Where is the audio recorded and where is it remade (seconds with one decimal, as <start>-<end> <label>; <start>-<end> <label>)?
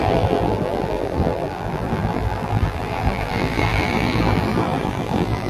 0.0-5.5 remade